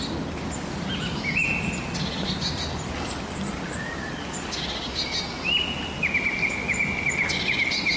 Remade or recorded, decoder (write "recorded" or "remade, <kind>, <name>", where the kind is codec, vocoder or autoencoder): recorded